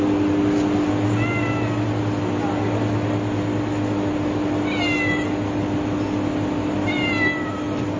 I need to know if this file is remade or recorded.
recorded